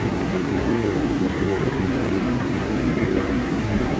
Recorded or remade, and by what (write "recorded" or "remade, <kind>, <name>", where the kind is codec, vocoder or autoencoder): remade, codec, SNAC